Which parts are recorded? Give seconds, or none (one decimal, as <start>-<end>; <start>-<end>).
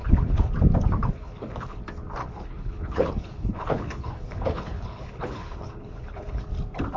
0.5-1.0; 1.8-2.2; 6.4-7.0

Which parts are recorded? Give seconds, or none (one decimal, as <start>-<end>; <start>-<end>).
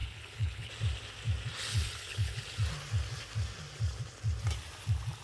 0.7-1.7; 2.4-5.2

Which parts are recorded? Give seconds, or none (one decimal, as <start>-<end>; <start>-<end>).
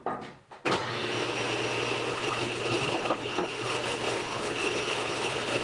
0.0-2.1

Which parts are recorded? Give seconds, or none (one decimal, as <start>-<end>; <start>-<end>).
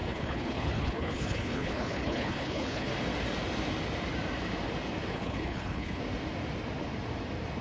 2.9-5.1; 6.0-7.6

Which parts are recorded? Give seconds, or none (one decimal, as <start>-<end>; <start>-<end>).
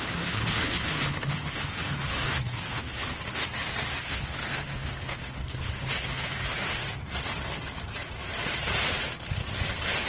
3.4-4.0; 6.8-10.1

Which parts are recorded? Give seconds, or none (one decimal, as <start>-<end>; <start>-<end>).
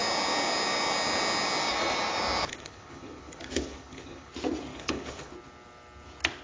0.0-2.5; 4.3-4.7; 5.3-6.4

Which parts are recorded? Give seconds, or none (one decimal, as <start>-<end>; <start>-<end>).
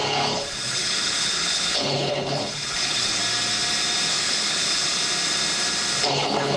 3.2-4.1; 5.0-6.1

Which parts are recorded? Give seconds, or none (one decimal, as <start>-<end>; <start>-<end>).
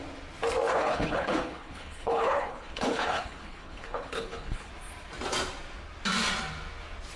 0.0-0.7; 4.7-7.2